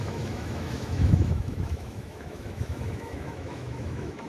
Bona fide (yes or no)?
no